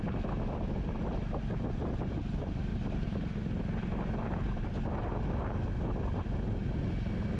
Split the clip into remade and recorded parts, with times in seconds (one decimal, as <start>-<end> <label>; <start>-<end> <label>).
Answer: 0.0-2.7 recorded; 2.7-3.4 remade; 3.4-7.4 recorded